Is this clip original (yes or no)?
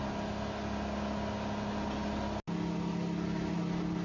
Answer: yes